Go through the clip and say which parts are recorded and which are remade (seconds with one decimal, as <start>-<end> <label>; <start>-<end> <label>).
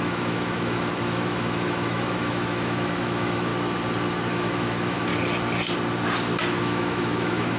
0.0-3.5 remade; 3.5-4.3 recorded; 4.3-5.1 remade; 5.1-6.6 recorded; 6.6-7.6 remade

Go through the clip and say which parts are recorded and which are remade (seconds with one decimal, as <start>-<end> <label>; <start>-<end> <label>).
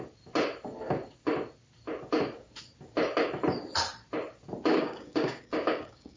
0.0-4.7 recorded; 4.7-6.2 remade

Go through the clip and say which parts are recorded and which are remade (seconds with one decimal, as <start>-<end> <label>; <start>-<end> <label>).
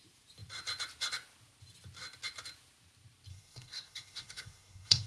0.0-3.3 recorded; 3.3-5.1 remade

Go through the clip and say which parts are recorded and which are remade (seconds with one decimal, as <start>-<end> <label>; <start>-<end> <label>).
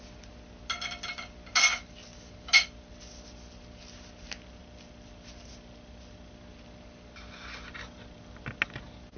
0.0-9.2 recorded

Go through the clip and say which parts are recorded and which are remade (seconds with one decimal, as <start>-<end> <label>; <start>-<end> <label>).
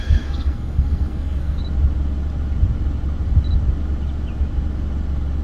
0.0-1.6 remade; 1.6-5.4 recorded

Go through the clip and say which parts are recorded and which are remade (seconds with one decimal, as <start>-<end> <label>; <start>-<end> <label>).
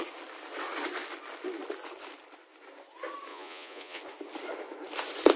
0.0-3.3 recorded; 3.3-4.0 remade; 4.0-5.4 recorded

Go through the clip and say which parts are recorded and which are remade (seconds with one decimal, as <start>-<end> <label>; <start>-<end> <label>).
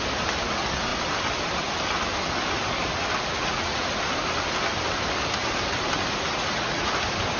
0.0-3.3 recorded; 3.3-3.9 remade; 3.9-6.3 recorded; 6.3-6.9 remade; 6.9-7.4 recorded